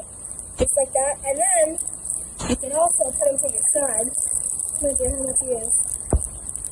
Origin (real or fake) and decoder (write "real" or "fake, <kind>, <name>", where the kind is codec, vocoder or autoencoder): real